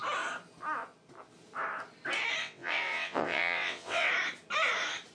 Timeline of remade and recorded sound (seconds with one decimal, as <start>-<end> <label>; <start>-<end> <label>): 0.0-2.4 recorded; 2.4-4.1 remade; 4.1-5.1 recorded